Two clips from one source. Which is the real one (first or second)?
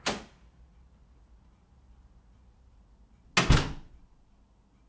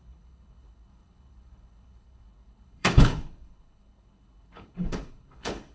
first